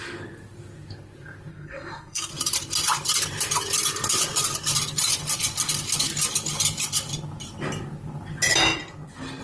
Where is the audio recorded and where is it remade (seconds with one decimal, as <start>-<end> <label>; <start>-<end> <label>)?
0.0-1.5 recorded; 1.5-2.3 remade; 2.3-9.4 recorded